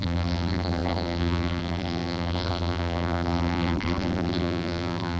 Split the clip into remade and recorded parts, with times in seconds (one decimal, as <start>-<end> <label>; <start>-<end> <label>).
0.0-5.2 remade